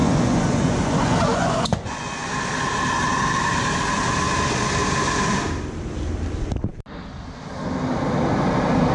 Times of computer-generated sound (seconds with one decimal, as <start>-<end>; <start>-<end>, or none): 0.0-2.3